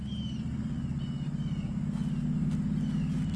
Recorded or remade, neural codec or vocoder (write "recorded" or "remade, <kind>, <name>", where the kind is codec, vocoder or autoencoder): recorded